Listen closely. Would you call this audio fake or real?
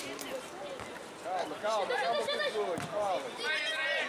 fake